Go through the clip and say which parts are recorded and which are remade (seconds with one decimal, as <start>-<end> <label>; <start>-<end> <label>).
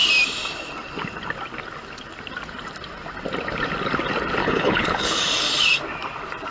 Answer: 0.0-4.4 recorded; 4.4-5.2 remade; 5.2-6.5 recorded